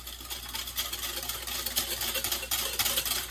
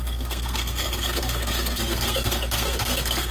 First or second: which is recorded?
first